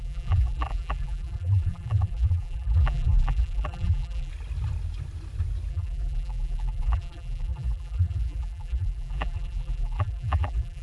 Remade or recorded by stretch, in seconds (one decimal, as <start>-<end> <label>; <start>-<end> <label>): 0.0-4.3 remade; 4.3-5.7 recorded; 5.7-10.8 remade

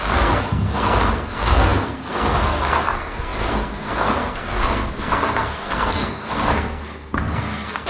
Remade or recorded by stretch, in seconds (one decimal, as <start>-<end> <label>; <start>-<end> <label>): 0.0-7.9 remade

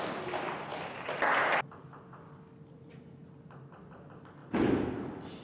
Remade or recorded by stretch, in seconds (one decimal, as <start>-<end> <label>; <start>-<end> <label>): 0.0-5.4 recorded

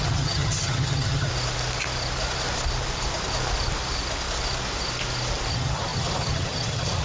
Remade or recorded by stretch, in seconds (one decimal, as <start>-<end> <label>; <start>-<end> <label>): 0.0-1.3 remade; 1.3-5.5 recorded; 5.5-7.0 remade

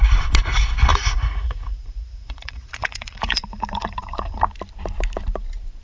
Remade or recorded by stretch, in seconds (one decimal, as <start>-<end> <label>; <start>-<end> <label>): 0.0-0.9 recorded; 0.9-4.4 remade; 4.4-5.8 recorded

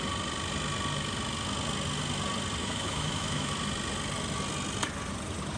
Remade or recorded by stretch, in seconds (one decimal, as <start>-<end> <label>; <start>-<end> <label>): 0.0-2.6 recorded; 2.6-3.5 remade; 3.5-5.6 recorded

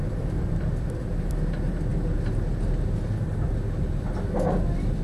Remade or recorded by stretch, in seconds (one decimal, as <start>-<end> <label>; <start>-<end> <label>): 0.0-1.4 remade; 1.4-5.0 recorded

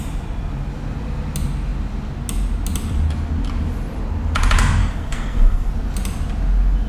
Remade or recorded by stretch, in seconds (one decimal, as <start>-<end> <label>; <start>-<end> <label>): 0.0-4.8 recorded; 4.8-5.7 remade; 5.7-6.9 recorded